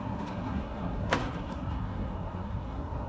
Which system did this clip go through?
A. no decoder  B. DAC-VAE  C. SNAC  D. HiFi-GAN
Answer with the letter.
C